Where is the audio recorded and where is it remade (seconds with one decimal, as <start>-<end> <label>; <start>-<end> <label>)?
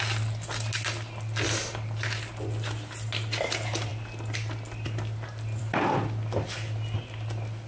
0.0-7.7 recorded